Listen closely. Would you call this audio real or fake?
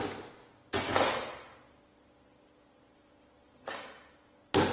real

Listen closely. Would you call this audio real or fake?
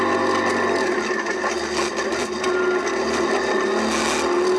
real